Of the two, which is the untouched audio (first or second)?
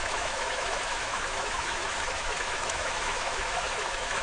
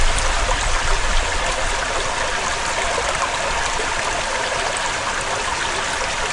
second